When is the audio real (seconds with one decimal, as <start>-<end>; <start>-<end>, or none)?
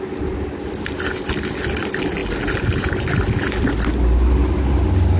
0.0-5.2